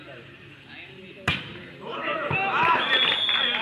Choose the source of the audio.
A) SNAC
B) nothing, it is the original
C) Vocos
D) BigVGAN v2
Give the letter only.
B